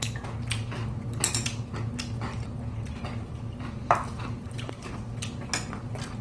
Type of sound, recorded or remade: recorded